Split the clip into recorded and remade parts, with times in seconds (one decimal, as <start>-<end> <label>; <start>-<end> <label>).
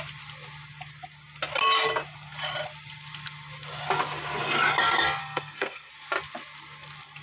0.0-5.2 recorded; 5.2-5.9 remade; 5.9-7.2 recorded